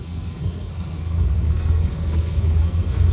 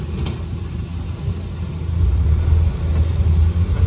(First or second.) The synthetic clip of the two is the first